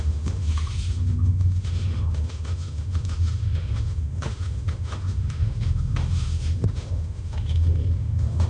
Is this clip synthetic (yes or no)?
yes